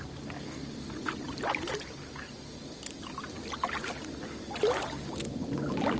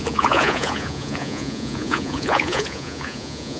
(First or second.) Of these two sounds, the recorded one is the first